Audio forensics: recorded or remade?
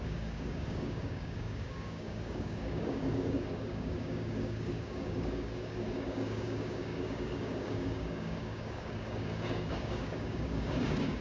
remade